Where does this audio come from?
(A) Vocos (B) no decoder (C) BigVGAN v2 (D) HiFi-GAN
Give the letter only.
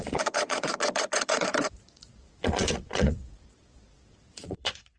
A